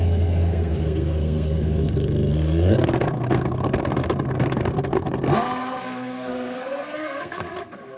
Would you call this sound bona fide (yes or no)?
no